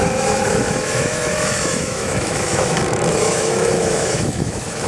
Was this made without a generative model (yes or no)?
no